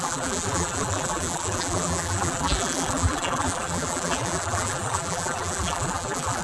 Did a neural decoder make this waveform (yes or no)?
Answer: yes